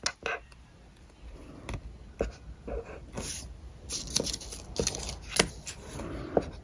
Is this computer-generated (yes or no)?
no